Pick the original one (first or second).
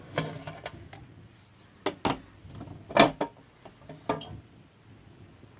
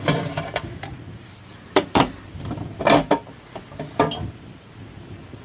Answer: first